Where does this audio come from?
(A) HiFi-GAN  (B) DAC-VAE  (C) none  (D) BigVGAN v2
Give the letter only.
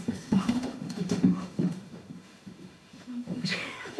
B